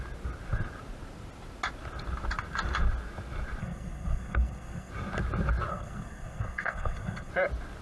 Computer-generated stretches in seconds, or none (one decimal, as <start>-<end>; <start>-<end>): 3.6-4.9; 5.7-7.3